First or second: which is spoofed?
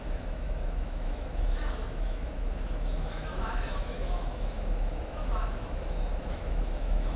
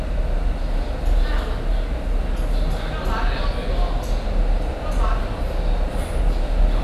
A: first